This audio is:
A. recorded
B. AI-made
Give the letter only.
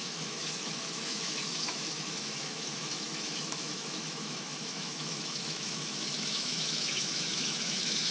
B